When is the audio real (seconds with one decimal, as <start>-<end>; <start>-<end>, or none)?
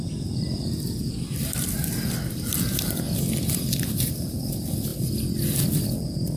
4.9-5.8